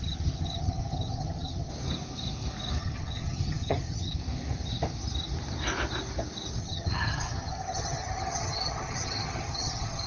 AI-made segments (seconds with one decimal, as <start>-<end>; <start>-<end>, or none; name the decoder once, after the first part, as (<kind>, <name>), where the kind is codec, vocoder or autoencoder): 0.0-1.7 (vocoder, HiFi-GAN); 2.8-4.2; 6.6-10.1